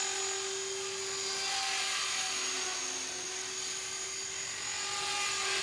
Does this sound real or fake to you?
real